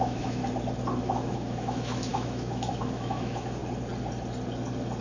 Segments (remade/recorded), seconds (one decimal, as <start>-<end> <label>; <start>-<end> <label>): 0.0-0.4 remade; 0.4-1.0 recorded; 1.0-3.6 remade; 3.6-5.0 recorded